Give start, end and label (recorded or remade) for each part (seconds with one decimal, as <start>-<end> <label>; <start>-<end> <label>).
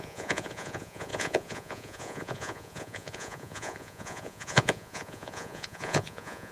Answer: 0.0-6.5 remade